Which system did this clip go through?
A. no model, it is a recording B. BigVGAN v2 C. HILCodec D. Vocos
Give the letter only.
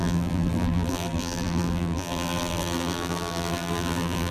B